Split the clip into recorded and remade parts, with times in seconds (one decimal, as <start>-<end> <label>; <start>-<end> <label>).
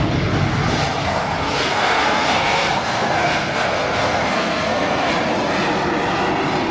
0.0-1.1 recorded; 1.1-5.1 remade; 5.1-6.7 recorded